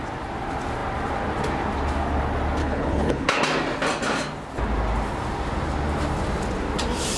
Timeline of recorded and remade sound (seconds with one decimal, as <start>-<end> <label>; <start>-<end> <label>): 0.0-2.6 recorded; 2.6-3.4 remade; 3.4-7.2 recorded

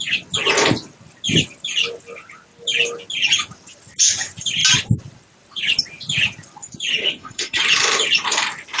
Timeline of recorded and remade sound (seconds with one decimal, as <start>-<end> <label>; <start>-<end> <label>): 0.0-7.0 recorded; 7.0-7.6 remade; 7.6-8.8 recorded